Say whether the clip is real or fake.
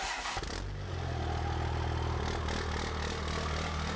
real